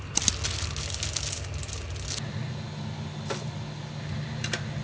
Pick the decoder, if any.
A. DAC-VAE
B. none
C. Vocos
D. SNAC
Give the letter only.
B